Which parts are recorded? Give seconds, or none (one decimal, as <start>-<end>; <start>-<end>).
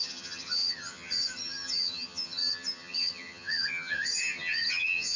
none